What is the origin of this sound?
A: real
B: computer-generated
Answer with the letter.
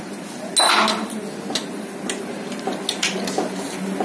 A